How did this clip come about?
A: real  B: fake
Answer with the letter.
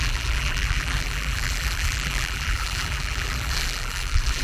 B